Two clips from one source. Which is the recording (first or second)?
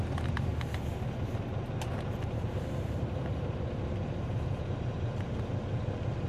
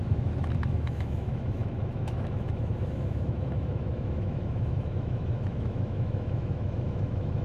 first